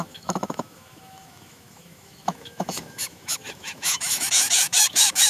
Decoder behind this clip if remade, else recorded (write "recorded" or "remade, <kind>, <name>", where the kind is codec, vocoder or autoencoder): remade, autoencoder, DAC-VAE